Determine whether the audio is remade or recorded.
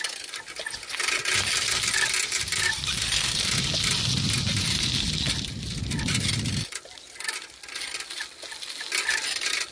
recorded